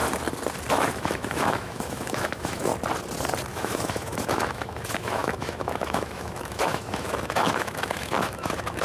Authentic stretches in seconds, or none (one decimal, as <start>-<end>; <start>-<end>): 0.0-0.7; 2.7-3.5